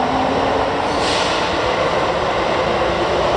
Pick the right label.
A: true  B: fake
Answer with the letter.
A